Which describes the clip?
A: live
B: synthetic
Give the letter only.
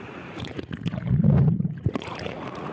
B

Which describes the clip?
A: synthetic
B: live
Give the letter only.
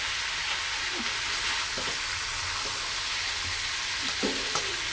B